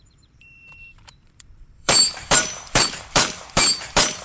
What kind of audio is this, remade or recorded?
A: remade